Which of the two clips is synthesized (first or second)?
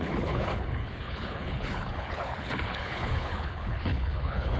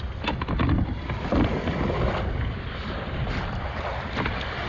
first